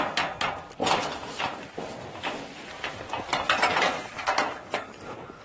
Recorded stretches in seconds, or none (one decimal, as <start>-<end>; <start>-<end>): 0.0-0.8; 4.0-5.4